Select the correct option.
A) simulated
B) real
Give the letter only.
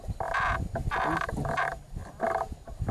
B